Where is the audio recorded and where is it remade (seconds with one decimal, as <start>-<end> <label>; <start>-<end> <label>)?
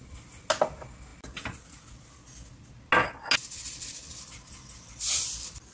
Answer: 0.0-5.7 recorded